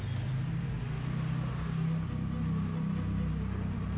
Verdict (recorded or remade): recorded